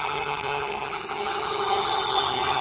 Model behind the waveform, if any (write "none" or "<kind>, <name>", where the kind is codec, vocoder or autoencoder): vocoder, HiFi-GAN